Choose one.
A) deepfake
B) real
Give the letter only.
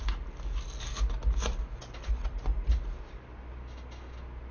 B